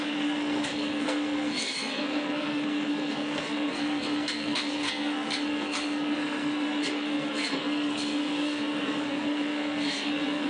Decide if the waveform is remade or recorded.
remade